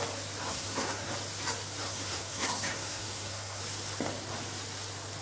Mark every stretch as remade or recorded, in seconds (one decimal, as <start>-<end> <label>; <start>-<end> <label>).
0.0-0.5 recorded; 0.5-1.1 remade; 1.1-1.8 recorded; 1.8-3.6 remade; 3.6-5.2 recorded